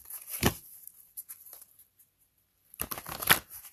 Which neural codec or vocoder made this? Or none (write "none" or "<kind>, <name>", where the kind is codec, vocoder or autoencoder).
none